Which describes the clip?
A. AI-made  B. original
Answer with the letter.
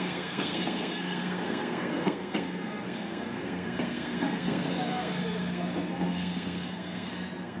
A